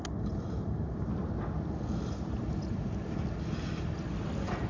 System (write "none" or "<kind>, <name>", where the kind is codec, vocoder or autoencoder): none